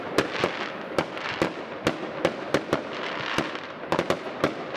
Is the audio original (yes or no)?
yes